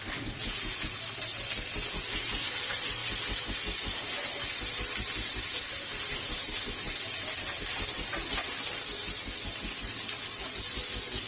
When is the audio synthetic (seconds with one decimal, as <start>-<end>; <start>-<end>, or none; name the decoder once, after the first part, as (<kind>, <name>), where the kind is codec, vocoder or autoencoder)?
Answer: 0.4-1.0 (vocoder, Vocos)